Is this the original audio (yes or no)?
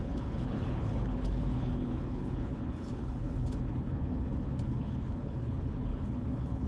no